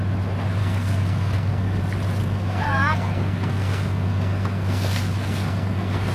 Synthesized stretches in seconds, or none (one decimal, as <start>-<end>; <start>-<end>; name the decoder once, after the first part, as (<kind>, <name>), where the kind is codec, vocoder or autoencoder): 0.6-1.8 (codec, SNAC); 2.2-6.1